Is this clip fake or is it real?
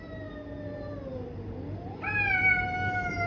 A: real